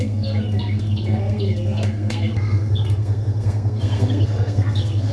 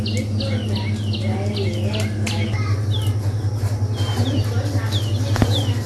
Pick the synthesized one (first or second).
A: first